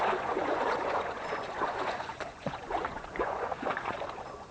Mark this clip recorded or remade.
remade